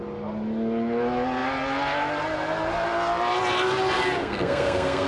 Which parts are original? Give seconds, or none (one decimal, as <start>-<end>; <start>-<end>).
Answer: 0.0-4.2